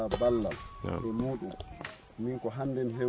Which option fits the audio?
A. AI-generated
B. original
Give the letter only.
B